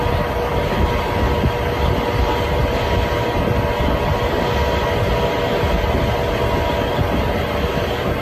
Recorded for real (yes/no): yes